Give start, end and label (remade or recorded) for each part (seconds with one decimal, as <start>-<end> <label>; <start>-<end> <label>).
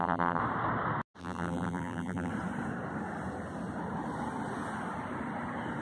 0.0-0.4 remade; 0.4-1.2 recorded; 1.2-2.3 remade; 2.3-5.8 recorded